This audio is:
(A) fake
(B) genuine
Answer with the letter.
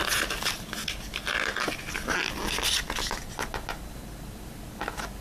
B